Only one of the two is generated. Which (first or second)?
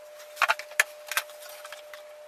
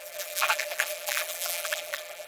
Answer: second